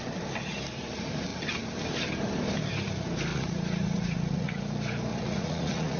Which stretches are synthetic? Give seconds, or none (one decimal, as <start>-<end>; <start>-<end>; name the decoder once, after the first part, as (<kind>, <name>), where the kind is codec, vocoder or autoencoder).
3.3-4.6 (vocoder, Vocos); 5.1-6.0